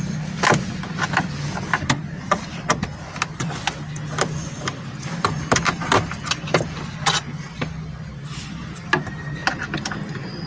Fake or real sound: real